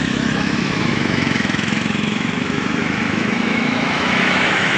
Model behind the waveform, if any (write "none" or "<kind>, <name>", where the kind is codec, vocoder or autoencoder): autoencoder, DAC-VAE